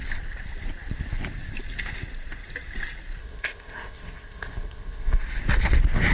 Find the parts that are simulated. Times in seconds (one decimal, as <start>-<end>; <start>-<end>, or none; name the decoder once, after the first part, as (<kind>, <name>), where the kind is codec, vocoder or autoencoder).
3.2-5.2 (codec, ZipCodec)